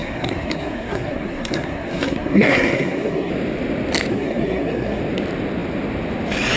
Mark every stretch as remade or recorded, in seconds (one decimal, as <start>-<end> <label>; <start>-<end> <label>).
0.0-3.3 remade; 3.3-4.1 recorded; 4.1-5.0 remade; 5.0-6.6 recorded